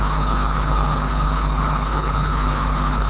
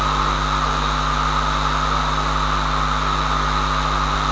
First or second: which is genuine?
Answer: second